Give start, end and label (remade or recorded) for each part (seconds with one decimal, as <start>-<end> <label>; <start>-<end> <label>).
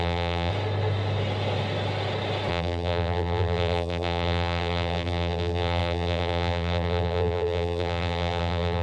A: 0.0-0.5 remade; 0.5-2.5 recorded; 2.5-8.8 remade